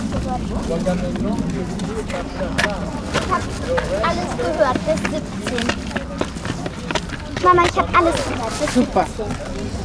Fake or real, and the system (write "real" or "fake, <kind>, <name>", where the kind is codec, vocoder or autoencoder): real